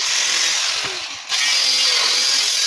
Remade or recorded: recorded